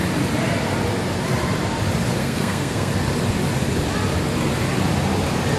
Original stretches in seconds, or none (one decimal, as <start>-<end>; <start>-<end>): 0.0-2.2; 2.9-5.6